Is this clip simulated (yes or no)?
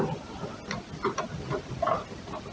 no